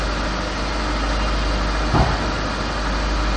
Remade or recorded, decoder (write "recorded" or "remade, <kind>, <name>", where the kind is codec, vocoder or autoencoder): recorded